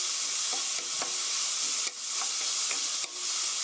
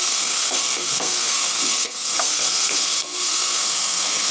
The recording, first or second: first